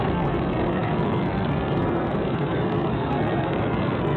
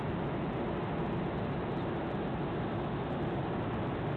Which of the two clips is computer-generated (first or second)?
first